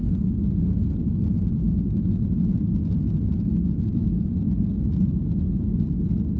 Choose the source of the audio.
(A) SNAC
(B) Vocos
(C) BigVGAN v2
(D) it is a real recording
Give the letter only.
D